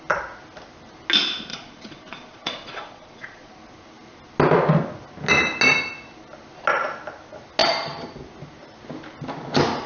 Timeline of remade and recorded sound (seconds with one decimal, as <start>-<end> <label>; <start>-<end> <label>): 0.0-1.5 recorded; 1.5-3.5 remade; 3.5-9.9 recorded

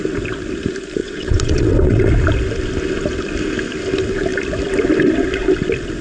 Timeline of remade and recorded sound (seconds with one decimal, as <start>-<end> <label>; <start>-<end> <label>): 0.0-1.0 recorded; 1.0-2.1 remade; 2.1-6.0 recorded

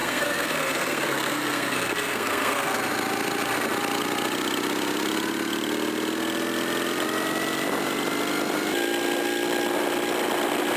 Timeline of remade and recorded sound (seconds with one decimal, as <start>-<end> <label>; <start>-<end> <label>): 0.0-2.8 remade; 2.8-10.8 recorded